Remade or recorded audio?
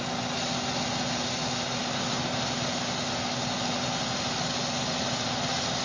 recorded